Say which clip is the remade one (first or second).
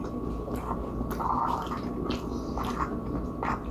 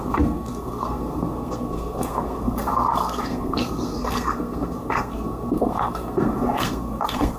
second